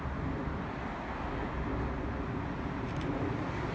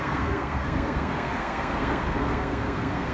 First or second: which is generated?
second